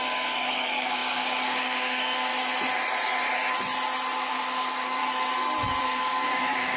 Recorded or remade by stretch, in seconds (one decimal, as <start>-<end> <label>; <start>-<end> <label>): 0.0-2.3 remade; 2.3-4.3 recorded; 4.3-5.0 remade; 5.0-5.8 recorded; 5.8-6.8 remade